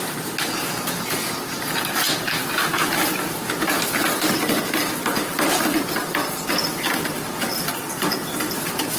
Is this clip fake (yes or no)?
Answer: no